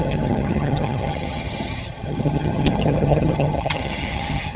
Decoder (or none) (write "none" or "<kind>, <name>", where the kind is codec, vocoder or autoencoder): vocoder, HiFi-GAN